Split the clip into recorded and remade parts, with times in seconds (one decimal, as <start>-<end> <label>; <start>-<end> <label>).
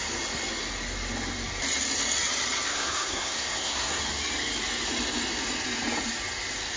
0.0-2.7 recorded; 2.7-4.0 remade; 4.0-6.8 recorded